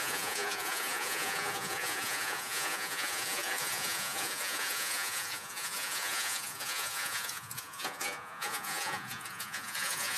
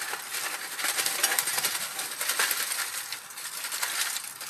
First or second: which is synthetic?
first